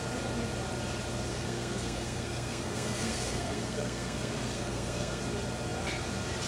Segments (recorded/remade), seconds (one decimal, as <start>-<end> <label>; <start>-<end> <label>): 0.0-1.3 recorded; 1.3-5.2 remade; 5.2-6.5 recorded